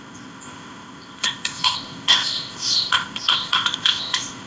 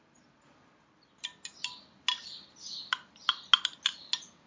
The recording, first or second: second